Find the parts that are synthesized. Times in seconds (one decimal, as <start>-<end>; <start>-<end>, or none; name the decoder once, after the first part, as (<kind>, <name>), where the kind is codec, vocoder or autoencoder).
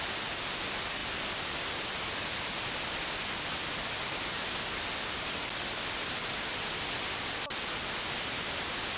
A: none